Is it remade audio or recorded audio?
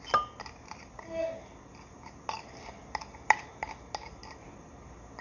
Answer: recorded